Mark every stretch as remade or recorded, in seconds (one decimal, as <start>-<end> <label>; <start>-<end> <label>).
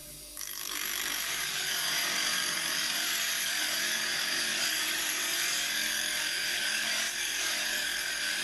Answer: 0.0-8.4 remade